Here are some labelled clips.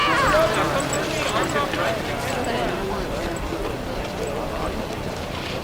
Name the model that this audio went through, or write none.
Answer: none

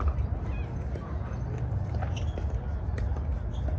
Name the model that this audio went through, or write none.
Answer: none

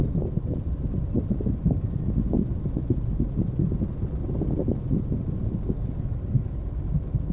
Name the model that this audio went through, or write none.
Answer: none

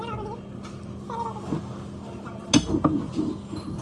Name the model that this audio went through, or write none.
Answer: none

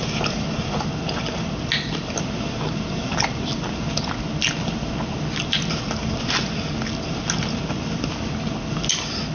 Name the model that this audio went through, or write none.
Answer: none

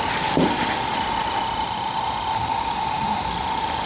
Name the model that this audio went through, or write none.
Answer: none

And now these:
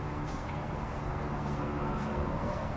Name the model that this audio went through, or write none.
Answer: codec, SNAC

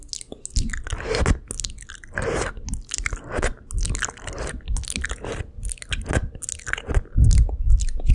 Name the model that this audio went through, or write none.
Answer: none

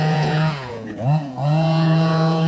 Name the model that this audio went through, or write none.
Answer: vocoder, Vocos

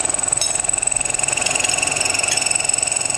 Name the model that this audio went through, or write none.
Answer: none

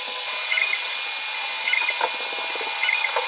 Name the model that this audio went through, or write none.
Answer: none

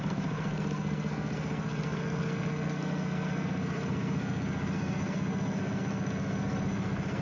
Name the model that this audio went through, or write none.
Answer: codec, SNAC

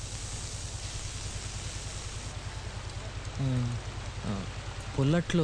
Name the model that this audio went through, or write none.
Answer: none